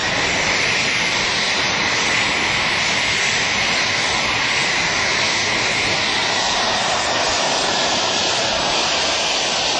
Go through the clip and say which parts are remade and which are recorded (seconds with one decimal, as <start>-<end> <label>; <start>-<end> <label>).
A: 0.0-3.8 remade; 3.8-6.2 recorded; 6.2-9.2 remade; 9.2-9.8 recorded